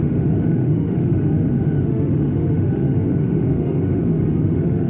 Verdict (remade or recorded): remade